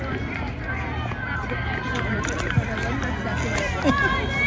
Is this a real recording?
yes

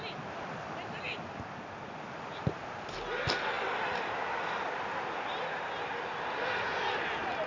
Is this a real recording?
yes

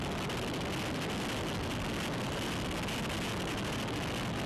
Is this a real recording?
yes